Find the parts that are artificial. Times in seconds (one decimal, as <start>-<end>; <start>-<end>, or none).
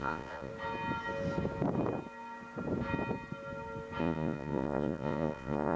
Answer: 0.0-0.5; 4.0-5.8